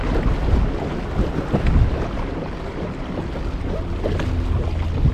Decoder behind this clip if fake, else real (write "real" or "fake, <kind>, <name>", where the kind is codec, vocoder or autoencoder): real